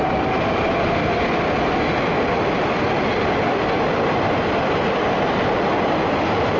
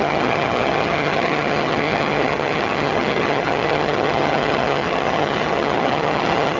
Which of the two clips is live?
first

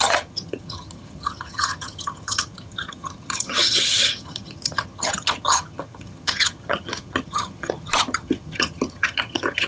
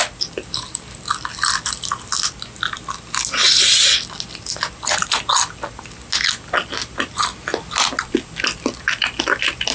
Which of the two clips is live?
second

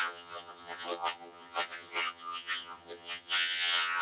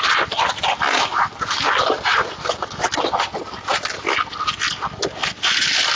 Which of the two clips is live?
second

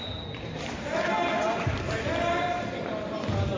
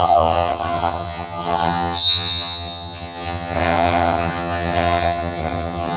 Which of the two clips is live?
first